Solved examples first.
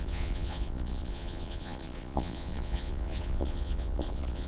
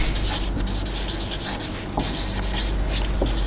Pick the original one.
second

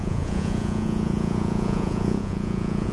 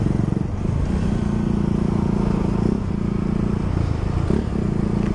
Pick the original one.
second